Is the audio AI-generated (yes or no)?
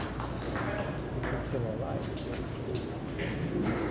no